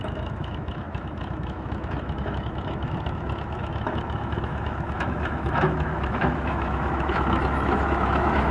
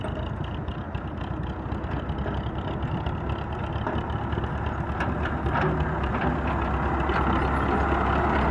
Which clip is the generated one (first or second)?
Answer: first